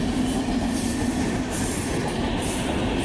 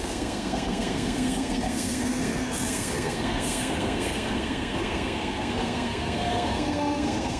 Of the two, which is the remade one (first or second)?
second